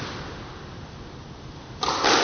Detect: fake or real real